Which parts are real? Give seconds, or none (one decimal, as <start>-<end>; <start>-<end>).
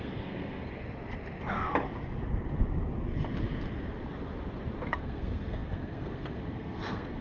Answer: 0.7-5.0